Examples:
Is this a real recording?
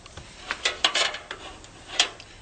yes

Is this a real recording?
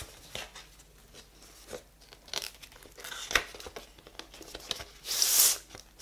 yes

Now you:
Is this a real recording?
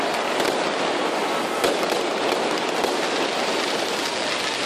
yes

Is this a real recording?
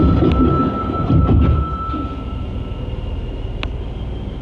yes